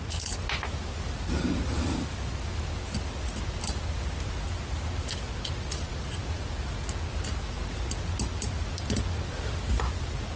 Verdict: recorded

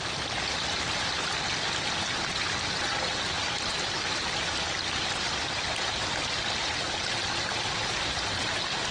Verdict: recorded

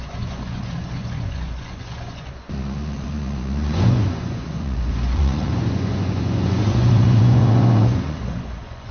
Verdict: remade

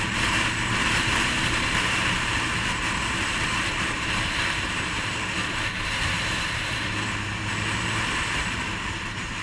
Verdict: remade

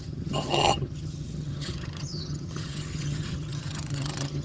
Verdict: remade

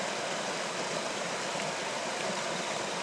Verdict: recorded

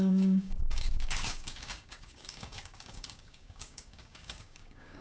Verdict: remade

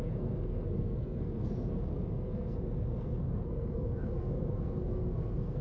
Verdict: remade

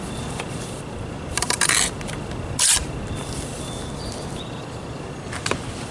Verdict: recorded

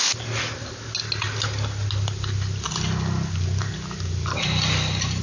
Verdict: recorded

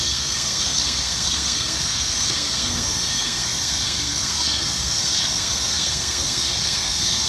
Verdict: remade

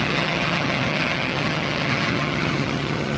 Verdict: remade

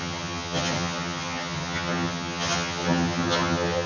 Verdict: remade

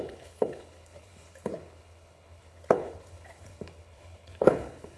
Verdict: remade